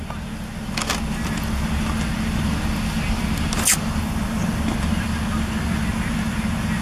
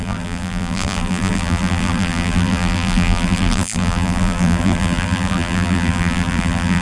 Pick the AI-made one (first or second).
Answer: second